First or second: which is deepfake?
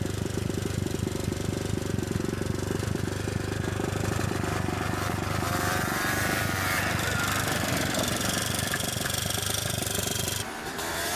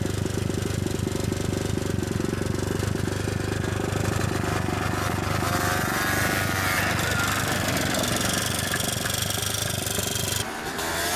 first